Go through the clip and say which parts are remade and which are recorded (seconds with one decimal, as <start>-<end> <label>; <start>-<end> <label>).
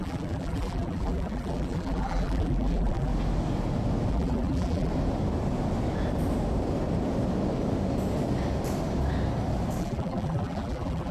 0.0-3.1 remade; 3.1-4.1 recorded; 4.1-4.9 remade; 4.9-9.8 recorded; 9.8-11.1 remade